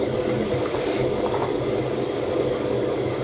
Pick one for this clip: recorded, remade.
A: remade